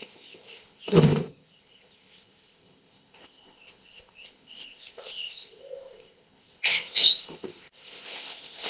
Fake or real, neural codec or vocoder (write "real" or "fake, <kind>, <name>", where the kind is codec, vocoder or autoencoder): fake, codec, ZipCodec